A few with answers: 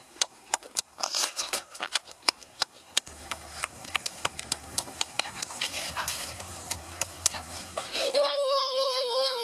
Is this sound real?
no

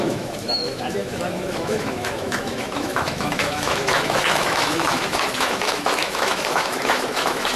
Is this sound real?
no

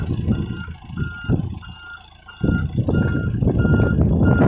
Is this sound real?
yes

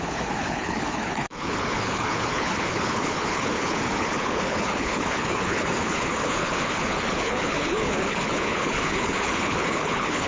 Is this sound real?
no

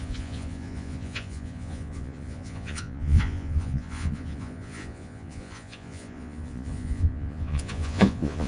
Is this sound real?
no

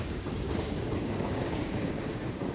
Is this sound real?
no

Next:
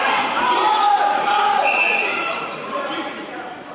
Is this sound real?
no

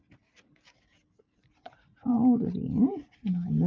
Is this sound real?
no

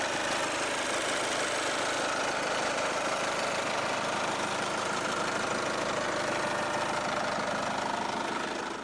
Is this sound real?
yes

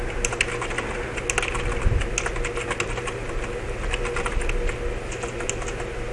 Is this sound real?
yes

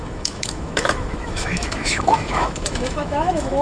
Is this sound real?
no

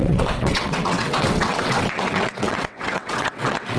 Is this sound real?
no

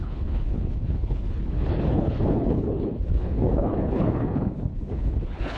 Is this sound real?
no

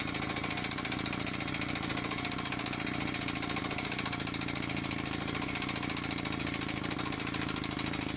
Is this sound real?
yes